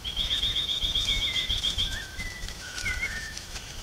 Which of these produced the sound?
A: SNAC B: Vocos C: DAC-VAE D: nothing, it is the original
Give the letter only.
C